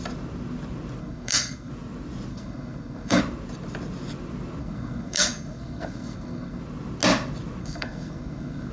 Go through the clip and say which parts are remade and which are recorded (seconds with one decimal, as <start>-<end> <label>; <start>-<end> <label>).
0.0-1.0 recorded; 1.0-1.7 remade; 1.7-2.3 recorded; 2.3-3.2 remade; 3.2-4.6 recorded; 4.6-6.6 remade; 6.6-7.6 recorded; 7.6-8.7 remade